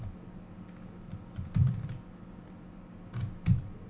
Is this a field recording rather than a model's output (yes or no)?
yes